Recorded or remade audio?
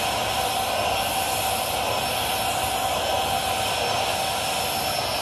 recorded